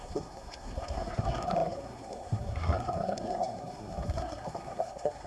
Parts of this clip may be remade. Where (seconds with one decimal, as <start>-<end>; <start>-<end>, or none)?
0.0-5.3